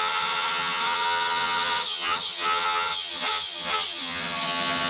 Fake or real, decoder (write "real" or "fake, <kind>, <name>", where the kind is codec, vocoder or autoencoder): fake, vocoder, HiFi-GAN